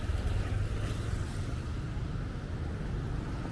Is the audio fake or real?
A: real